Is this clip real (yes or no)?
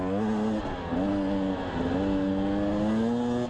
yes